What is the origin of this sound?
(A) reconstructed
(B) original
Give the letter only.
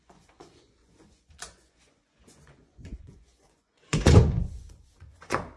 A